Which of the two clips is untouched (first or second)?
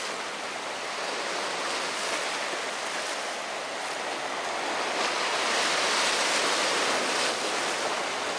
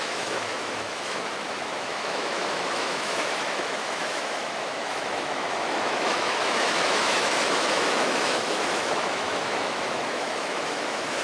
first